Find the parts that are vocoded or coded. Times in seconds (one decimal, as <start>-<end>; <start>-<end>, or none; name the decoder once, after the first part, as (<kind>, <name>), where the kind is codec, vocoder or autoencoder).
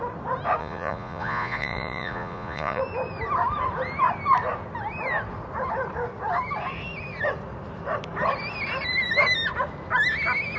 0.6-2.8 (vocoder, Vocos)